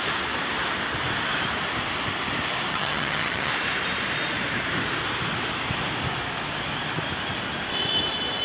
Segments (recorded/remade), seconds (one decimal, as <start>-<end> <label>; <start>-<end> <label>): 0.0-2.7 recorded; 2.7-3.5 remade; 3.5-8.4 recorded